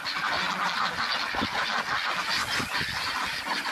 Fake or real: real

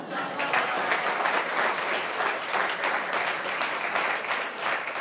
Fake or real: real